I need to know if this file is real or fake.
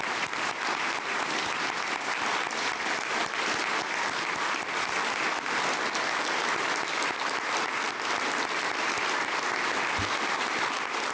real